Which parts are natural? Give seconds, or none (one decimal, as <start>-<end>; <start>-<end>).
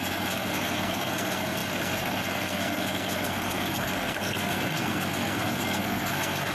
none